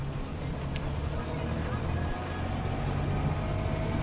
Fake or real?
real